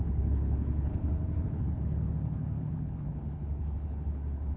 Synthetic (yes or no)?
yes